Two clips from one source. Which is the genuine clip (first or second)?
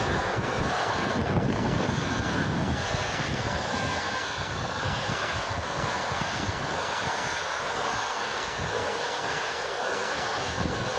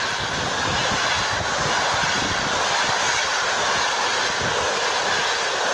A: second